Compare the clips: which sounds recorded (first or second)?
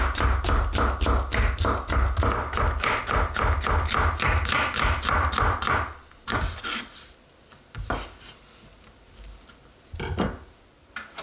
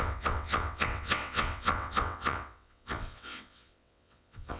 first